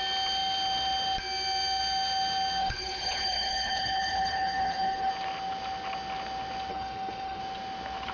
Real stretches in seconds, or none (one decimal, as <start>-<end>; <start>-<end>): 0.0-2.6; 5.1-6.7; 7.4-8.1